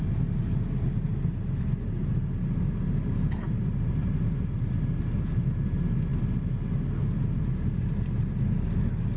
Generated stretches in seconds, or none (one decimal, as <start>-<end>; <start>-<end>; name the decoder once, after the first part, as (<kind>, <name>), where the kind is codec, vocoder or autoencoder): none